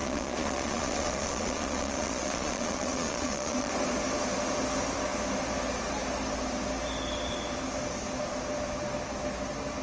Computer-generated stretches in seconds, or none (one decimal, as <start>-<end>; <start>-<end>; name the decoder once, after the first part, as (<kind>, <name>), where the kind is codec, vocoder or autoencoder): 0.0-3.7 (vocoder, Vocos)